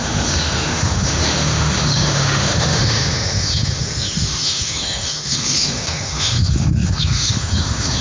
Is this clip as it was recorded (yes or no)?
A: no